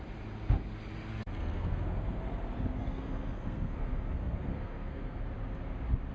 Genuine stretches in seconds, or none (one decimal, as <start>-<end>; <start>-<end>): 0.0-1.1; 2.2-2.8; 5.2-6.1